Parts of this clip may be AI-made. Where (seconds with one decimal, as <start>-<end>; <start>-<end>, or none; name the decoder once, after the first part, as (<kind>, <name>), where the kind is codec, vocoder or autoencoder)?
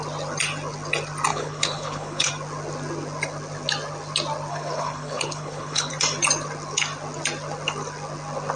1.3-2.3 (codec, HILCodec); 4.5-5.9